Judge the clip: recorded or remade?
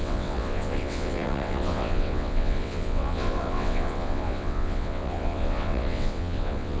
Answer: remade